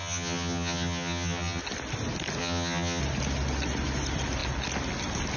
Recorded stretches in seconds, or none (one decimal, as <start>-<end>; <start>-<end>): 1.6-2.4; 3.0-5.4